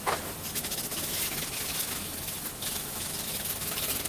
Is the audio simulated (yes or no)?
yes